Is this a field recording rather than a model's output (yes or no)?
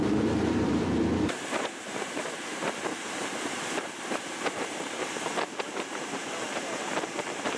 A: no